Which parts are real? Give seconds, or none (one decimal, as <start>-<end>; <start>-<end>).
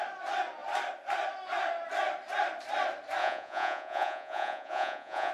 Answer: 0.0-3.2